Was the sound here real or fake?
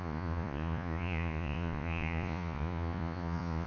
fake